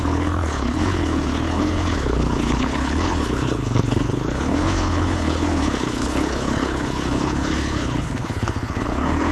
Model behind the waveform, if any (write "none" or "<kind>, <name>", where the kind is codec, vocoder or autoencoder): codec, HILCodec